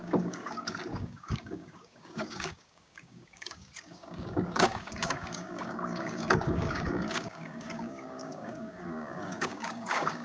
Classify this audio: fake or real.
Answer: fake